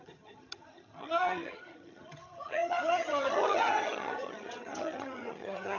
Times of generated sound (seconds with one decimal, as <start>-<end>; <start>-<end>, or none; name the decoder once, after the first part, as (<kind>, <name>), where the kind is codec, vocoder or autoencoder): 0.0-5.8 (vocoder, HiFi-GAN)